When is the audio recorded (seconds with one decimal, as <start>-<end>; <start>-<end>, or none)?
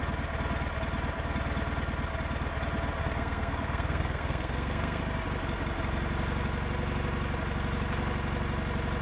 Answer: 0.0-3.0; 5.0-9.0